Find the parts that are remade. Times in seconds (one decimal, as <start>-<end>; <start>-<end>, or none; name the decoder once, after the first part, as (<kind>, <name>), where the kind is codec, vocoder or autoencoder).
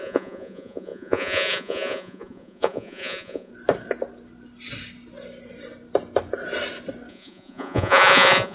0.0-3.5 (vocoder, Vocos); 7.1-8.5